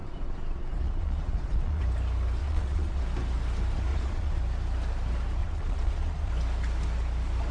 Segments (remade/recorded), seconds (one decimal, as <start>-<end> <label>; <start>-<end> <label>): 0.0-1.8 remade; 1.8-2.4 recorded; 2.4-3.0 remade; 3.0-3.9 recorded; 3.9-4.4 remade; 4.4-5.4 recorded; 5.4-6.3 remade; 6.3-7.5 recorded